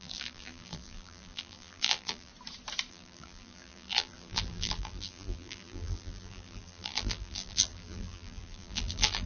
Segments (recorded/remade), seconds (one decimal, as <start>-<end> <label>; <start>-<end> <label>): 0.0-2.3 remade; 2.3-2.9 recorded; 2.9-9.3 remade